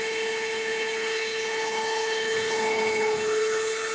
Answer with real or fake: fake